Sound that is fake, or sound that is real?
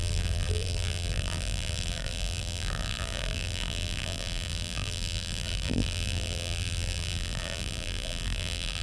fake